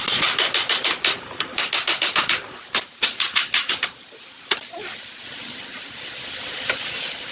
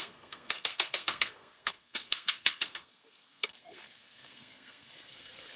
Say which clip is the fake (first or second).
second